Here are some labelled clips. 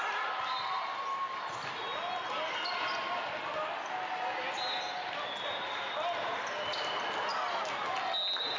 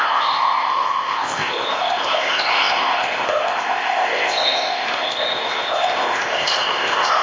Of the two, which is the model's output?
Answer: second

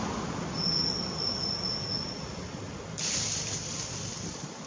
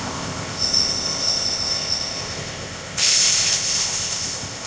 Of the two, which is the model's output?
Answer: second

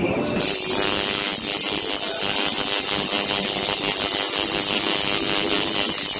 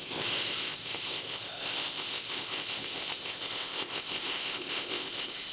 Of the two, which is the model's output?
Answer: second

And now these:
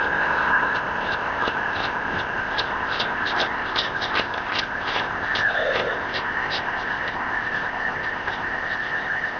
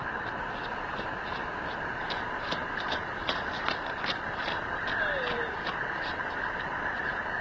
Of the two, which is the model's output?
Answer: first